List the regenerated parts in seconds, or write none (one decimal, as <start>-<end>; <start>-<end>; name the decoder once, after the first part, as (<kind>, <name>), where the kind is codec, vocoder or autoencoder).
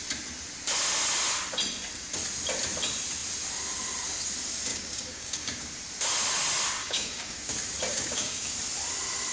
4.7-5.6 (codec, DAC); 6.8-7.5; 7.9-8.5